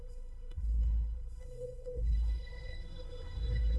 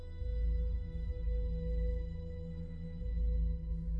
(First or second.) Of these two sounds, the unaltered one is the second